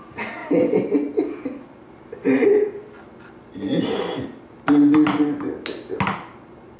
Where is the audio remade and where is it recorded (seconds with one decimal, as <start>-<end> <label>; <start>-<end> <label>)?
0.0-6.8 recorded